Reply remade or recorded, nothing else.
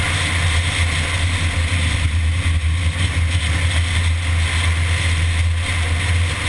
recorded